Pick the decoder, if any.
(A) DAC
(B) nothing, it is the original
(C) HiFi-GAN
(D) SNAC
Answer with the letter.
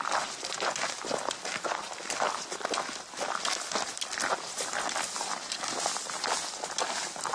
B